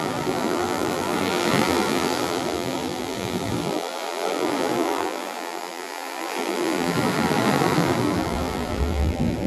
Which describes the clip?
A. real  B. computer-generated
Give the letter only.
B